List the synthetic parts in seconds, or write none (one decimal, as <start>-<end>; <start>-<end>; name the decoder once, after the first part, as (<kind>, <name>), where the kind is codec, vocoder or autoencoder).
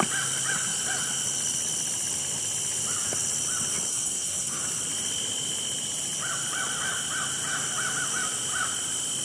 3.9-4.6 (codec, SNAC)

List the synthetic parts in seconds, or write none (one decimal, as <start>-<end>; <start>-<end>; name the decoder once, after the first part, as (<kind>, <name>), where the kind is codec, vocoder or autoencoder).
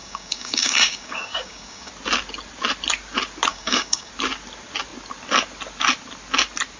0.0-1.9 (codec, DAC); 3.5-4.1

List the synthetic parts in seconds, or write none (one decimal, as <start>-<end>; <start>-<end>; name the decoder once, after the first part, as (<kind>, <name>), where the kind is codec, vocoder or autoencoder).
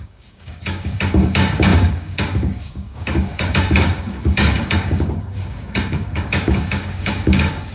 0.0-7.7 (codec, DAC)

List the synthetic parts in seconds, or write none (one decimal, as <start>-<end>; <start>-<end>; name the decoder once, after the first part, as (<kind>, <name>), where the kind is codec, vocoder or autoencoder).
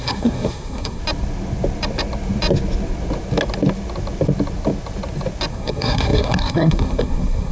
0.0-1.0 (codec, SNAC); 5.5-7.5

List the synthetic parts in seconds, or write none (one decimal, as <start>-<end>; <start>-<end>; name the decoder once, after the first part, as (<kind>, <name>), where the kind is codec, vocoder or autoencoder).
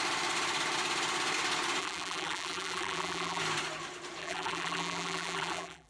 1.8-3.4 (vocoder, BigVGAN v2); 4.2-5.9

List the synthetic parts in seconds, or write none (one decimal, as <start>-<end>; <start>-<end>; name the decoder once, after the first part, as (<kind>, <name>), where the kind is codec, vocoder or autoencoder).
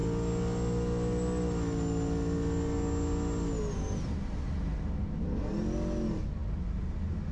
none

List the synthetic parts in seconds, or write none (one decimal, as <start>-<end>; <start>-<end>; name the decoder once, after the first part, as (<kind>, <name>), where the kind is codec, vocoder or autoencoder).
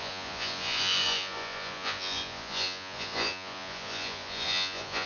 0.0-5.1 (vocoder, Vocos)